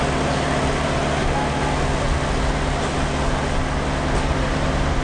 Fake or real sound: real